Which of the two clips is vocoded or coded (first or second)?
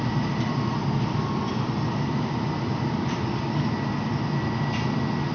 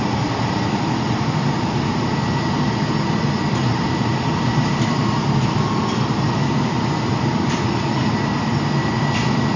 second